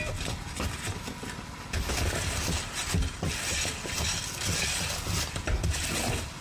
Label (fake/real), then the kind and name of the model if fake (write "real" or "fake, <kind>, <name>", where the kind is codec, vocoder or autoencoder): real